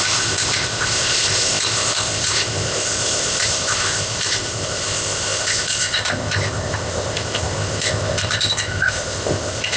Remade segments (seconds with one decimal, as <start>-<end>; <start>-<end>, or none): 0.0-9.8